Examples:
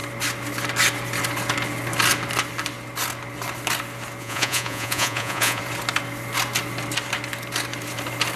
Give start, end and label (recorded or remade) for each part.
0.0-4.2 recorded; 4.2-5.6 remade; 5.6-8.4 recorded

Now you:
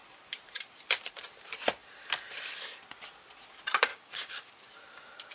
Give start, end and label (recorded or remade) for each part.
0.0-3.9 recorded; 3.9-4.5 remade; 4.5-5.3 recorded

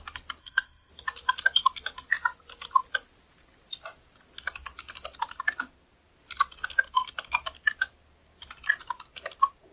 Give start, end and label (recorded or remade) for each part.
0.0-0.4 recorded; 0.4-0.9 remade; 0.9-9.7 recorded

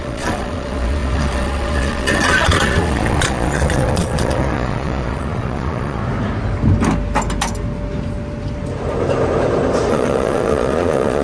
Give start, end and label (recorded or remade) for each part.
0.0-6.0 remade; 6.0-9.9 recorded; 9.9-11.2 remade

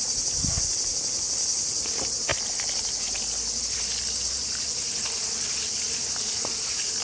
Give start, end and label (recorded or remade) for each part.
0.0-7.0 recorded

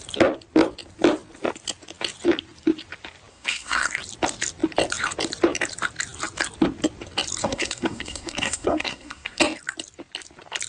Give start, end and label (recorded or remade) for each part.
0.0-3.3 recorded; 3.3-3.9 remade; 3.9-7.4 recorded; 7.4-9.4 remade; 9.4-10.7 recorded